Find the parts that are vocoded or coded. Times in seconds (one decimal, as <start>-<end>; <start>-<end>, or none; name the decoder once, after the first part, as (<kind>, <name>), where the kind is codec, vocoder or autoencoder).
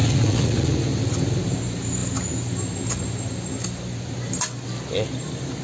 0.0-0.8 (vocoder, Vocos)